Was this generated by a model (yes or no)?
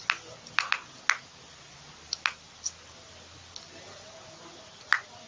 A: no